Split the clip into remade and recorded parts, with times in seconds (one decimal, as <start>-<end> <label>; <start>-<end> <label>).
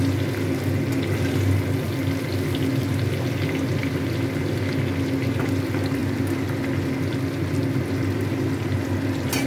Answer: 0.0-9.5 recorded